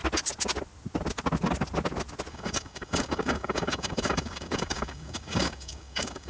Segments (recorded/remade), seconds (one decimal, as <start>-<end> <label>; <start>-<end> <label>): 0.0-2.3 recorded; 2.3-6.3 remade